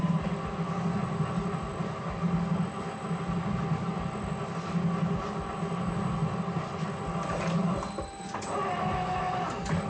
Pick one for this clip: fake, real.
real